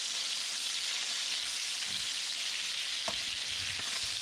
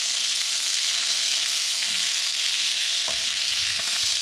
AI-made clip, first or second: second